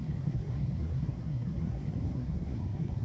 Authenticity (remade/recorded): remade